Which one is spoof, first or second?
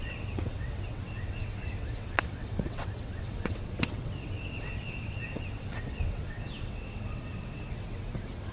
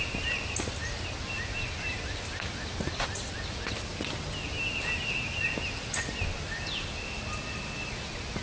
first